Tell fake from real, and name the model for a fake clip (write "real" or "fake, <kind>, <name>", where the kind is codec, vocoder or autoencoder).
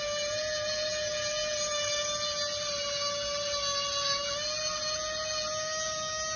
real